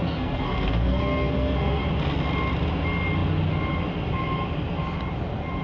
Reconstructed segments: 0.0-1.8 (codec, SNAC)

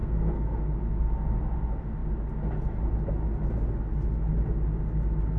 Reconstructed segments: 0.0-0.6 (codec, SNAC)

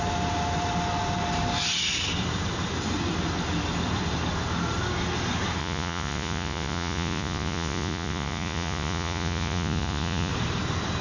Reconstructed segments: 5.6-10.3 (vocoder, Vocos)

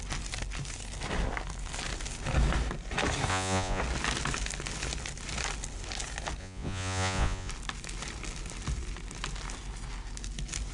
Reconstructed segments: 3.3-3.8 (vocoder, Vocos); 6.4-7.5

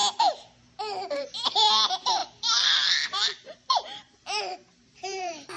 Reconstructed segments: 1.3-5.6 (vocoder, BigVGAN v2)